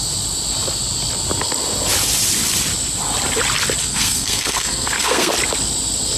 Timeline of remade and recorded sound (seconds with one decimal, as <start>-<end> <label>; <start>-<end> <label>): 0.0-3.8 recorded; 3.8-5.3 remade; 5.3-6.2 recorded

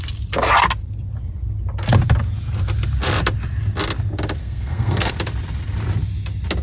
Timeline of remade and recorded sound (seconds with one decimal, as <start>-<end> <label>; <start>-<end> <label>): 0.0-4.4 recorded; 4.4-5.1 remade; 5.1-6.6 recorded